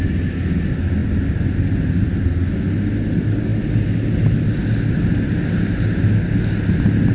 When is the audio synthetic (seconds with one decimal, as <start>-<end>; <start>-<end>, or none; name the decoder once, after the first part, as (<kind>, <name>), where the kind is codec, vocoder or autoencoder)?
none